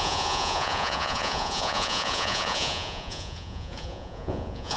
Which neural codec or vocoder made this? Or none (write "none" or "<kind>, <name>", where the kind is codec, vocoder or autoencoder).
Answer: vocoder, Vocos